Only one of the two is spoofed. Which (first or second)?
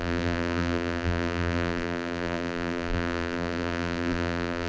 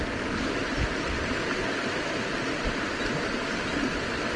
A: first